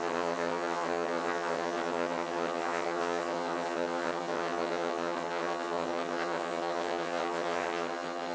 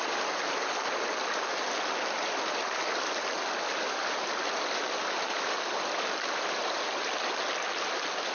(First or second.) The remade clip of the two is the first